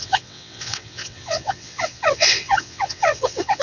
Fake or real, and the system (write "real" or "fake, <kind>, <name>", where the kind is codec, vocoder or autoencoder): fake, vocoder, WaveNeXt